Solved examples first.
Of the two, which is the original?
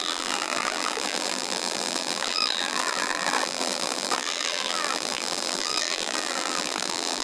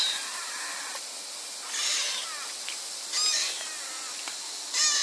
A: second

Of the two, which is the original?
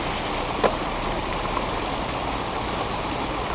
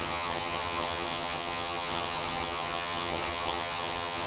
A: first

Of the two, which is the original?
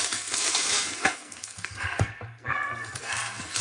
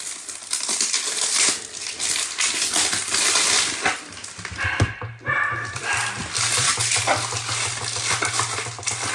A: second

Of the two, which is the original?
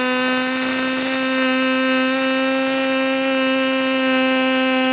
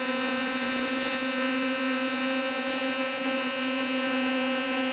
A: first